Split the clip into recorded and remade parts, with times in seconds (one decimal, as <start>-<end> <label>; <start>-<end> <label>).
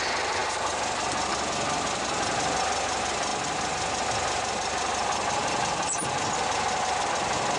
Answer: 0.0-7.6 recorded